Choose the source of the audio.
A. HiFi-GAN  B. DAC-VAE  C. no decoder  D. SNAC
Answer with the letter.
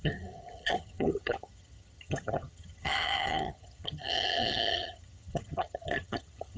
A